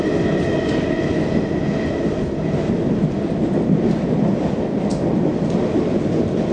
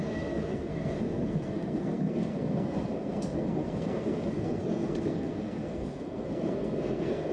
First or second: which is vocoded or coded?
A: second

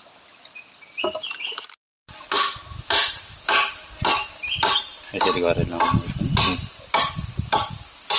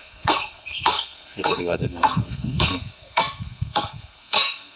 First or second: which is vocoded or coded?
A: second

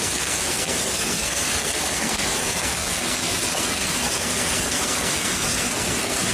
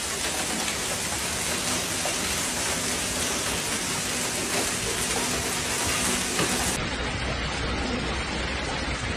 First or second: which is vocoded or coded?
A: first